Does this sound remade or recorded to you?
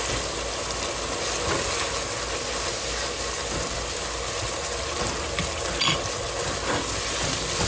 recorded